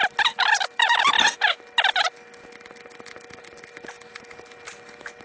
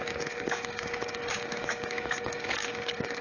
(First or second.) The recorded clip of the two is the first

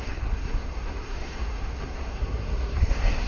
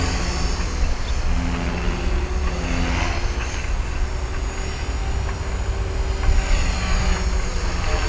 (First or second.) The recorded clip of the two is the second